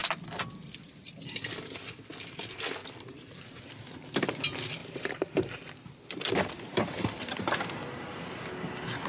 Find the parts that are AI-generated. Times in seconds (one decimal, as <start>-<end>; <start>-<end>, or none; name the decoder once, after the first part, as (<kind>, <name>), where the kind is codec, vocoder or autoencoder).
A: 0.0-2.1 (vocoder, BigVGAN v2); 2.8-3.4; 4.8-8.1